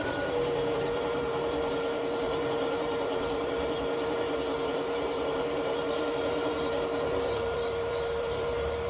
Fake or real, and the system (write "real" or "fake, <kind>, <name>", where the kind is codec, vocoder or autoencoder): fake, vocoder, BigVGAN v2